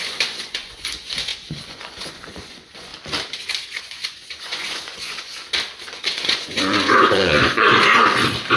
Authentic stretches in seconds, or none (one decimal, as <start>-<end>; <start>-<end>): 2.9-3.8; 5.3-5.9; 7.7-8.6